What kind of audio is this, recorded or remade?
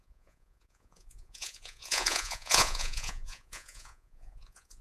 remade